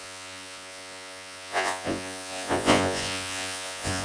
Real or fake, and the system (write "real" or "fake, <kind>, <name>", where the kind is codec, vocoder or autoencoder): fake, vocoder, Vocos